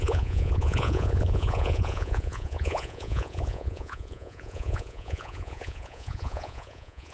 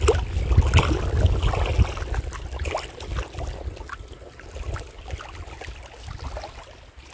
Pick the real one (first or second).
second